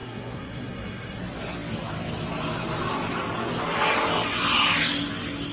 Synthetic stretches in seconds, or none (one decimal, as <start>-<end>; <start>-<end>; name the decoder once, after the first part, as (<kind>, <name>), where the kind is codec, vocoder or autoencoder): 0.0-1.2 (codec, SNAC)